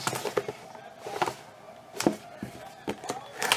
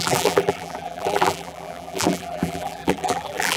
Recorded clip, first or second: first